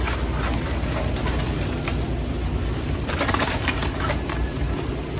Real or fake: real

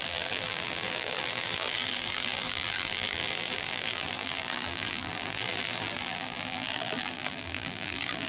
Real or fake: fake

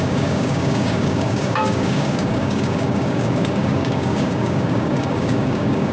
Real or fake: fake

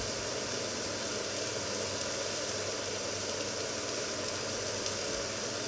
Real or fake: real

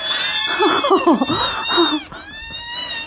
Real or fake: real